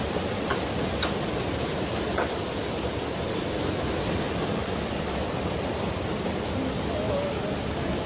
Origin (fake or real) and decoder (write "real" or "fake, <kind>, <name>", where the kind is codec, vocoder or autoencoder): real